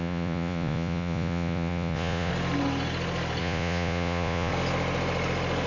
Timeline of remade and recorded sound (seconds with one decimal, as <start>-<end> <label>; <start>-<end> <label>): 0.0-2.3 remade; 2.3-3.4 recorded; 3.4-4.5 remade; 4.5-5.7 recorded